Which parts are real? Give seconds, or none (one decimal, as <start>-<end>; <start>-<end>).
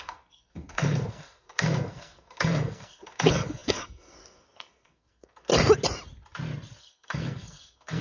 5.5-6.8